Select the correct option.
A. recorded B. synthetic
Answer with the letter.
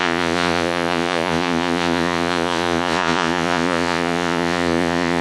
B